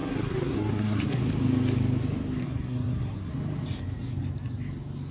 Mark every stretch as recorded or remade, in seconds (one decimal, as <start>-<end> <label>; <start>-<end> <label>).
0.0-1.2 remade; 1.2-2.4 recorded; 2.4-3.3 remade; 3.3-5.1 recorded